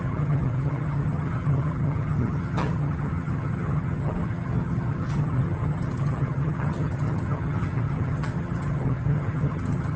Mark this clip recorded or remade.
remade